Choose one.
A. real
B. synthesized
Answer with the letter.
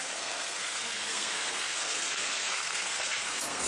B